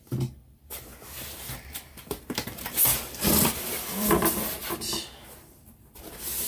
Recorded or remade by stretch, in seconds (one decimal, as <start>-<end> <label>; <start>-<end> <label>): 0.0-0.9 remade; 0.9-3.6 recorded; 3.6-4.6 remade; 4.6-5.4 recorded; 5.4-6.5 remade